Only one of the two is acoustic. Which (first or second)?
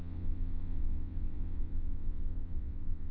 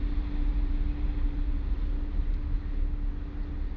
second